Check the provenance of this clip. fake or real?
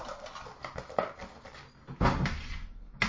real